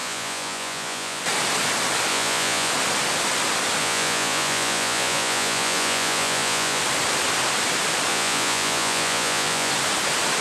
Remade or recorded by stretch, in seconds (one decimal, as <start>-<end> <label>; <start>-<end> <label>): 0.0-1.2 remade; 1.2-2.1 recorded; 2.1-2.7 remade; 2.7-3.8 recorded; 3.8-6.8 remade; 6.8-8.1 recorded; 8.1-9.7 remade; 9.7-10.4 recorded